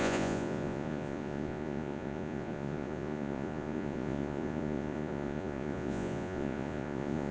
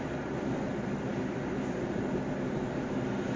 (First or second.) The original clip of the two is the second